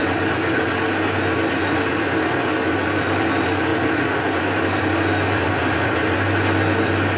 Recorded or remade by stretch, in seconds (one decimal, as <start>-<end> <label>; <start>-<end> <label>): 0.0-7.2 recorded